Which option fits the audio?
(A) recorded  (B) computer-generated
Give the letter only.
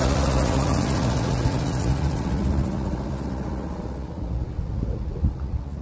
B